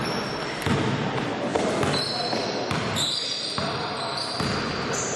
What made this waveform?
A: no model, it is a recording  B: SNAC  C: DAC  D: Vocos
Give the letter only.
A